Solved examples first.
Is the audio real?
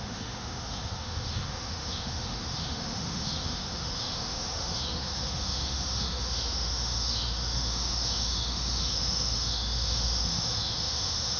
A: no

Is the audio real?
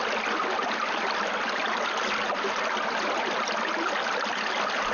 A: yes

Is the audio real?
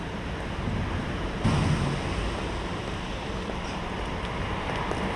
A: yes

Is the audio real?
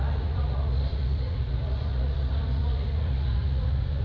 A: no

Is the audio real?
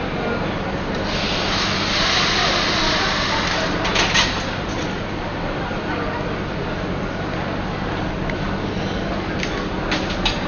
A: yes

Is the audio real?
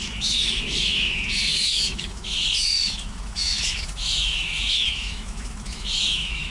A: no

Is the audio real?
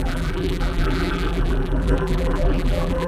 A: no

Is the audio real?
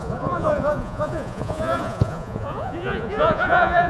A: no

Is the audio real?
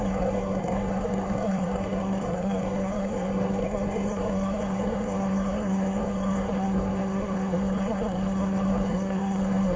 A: no